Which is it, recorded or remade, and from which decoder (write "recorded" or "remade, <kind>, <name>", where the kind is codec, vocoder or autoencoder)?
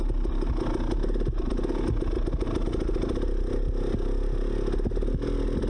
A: recorded